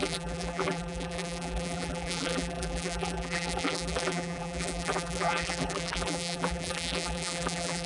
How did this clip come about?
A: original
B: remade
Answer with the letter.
B